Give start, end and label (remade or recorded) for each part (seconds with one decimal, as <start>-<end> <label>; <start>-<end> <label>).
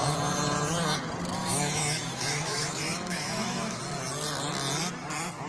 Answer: 0.0-1.4 recorded; 1.4-3.8 remade; 3.8-5.5 recorded